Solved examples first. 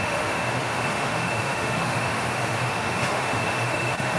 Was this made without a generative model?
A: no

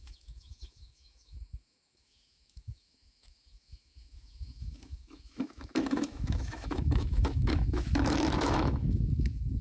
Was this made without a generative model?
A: no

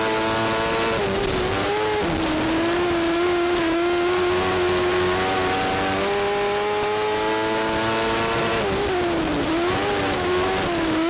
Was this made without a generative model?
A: yes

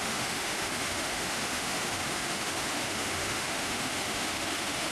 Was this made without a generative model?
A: no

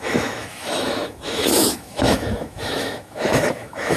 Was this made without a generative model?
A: no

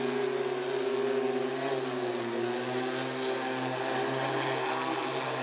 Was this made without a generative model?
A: yes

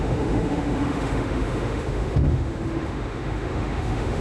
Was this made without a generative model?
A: no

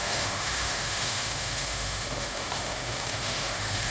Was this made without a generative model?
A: no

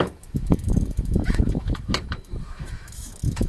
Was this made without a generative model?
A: no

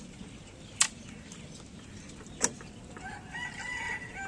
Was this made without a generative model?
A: yes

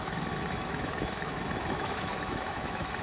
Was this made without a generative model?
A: no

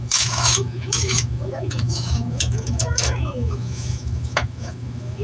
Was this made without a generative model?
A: no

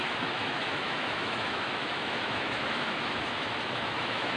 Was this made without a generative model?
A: no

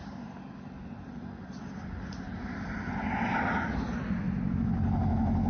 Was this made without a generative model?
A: yes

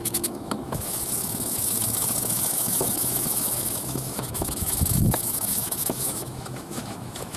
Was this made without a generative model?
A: no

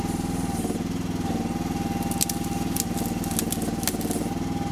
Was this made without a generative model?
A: yes